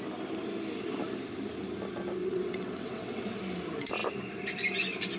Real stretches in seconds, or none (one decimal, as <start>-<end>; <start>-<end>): 0.0-2.2; 3.4-5.2